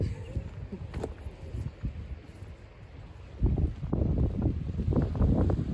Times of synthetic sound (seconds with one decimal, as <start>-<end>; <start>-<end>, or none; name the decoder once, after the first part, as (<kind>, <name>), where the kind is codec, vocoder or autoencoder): none